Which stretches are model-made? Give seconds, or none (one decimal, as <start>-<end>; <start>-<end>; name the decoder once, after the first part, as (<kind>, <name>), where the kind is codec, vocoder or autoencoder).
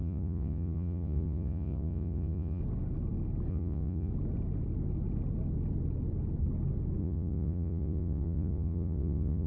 0.0-2.6 (vocoder, Vocos); 3.5-4.1; 7.0-9.5